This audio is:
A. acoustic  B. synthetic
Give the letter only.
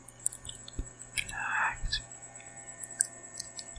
A